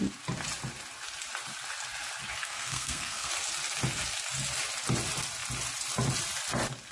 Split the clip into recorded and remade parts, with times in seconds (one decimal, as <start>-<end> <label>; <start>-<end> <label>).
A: 0.0-2.4 recorded; 2.4-3.3 remade; 3.3-6.9 recorded